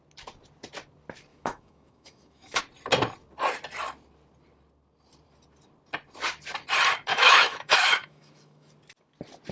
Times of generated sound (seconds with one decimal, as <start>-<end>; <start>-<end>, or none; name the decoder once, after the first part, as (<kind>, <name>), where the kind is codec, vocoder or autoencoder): 1.3-2.6 (autoencoder, DAC-VAE); 7.1-8.7